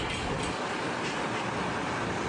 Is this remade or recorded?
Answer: recorded